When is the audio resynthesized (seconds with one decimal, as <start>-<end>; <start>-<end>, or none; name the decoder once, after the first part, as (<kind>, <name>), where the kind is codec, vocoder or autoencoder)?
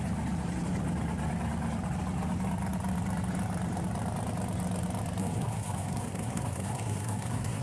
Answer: 5.2-7.6 (codec, SNAC)